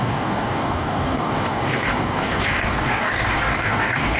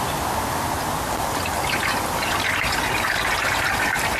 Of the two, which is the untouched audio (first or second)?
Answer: second